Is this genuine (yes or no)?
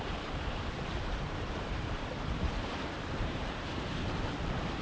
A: no